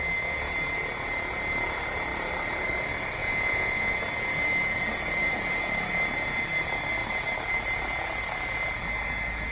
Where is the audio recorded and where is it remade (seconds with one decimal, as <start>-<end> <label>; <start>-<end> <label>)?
0.0-3.2 recorded; 3.2-3.9 remade; 3.9-9.5 recorded